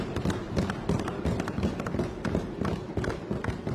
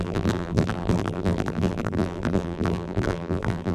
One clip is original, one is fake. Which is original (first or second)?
first